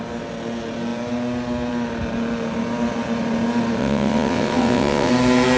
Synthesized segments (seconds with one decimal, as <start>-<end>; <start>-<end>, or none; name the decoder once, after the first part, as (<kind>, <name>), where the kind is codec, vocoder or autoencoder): 3.8-5.1 (vocoder, WaveNeXt)